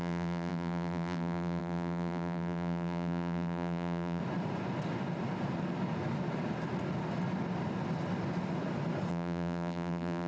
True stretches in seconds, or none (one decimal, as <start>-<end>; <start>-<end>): 4.2-9.1